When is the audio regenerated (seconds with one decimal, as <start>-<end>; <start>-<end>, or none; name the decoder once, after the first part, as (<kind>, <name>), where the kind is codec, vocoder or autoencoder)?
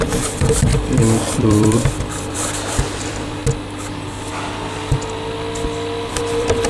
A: 0.0-0.7 (vocoder, BigVGAN v2); 1.3-3.4; 6.1-6.7